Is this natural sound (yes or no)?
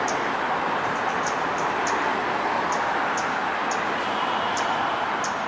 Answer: yes